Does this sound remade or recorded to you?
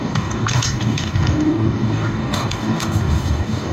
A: remade